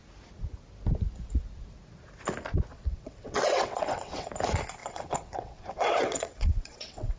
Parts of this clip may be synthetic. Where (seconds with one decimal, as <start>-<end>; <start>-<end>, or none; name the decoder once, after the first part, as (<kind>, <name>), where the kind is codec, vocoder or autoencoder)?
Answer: 2.7-4.3 (vocoder, WaveNeXt); 4.8-7.2